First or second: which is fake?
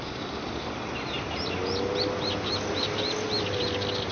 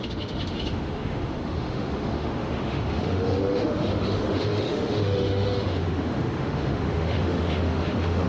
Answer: second